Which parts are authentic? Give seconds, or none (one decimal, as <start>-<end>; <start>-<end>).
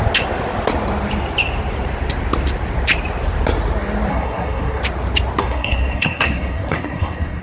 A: 0.0-4.1; 4.8-5.4